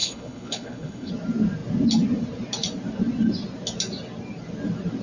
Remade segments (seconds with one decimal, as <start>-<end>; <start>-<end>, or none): 0.0-1.1